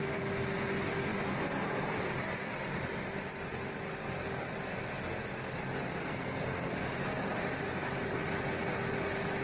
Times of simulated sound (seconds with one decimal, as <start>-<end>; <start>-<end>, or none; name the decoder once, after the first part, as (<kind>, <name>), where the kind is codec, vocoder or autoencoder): 6.0-6.7 (codec, SNAC)